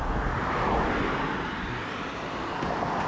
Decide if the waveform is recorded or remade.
recorded